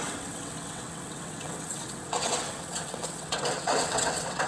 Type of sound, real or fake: fake